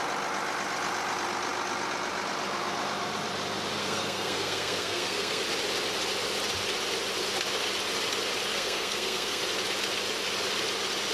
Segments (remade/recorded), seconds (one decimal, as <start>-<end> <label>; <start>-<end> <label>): 0.0-3.8 recorded; 3.8-5.4 remade; 5.4-8.5 recorded; 8.5-9.4 remade; 9.4-11.1 recorded